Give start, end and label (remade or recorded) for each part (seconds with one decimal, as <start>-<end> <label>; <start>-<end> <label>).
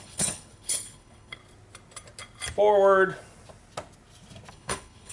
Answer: 0.0-1.4 remade; 1.4-4.5 recorded; 4.5-5.1 remade